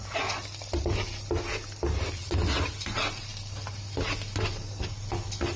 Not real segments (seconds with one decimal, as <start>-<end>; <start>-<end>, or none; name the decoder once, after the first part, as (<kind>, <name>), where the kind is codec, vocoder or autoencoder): none